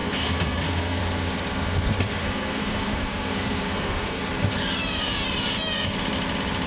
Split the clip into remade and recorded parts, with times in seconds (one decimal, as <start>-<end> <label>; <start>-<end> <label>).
0.0-1.0 remade; 1.0-2.2 recorded; 2.2-4.2 remade; 4.2-6.7 recorded